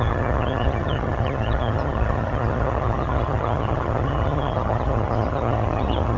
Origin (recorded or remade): remade